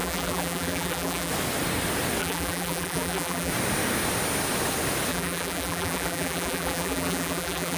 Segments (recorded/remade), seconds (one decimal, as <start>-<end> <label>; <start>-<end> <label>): 0.0-1.3 remade; 1.3-2.2 recorded; 2.2-3.5 remade; 3.5-5.1 recorded; 5.1-7.8 remade